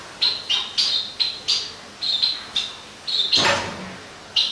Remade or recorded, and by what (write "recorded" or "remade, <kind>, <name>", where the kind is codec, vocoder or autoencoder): recorded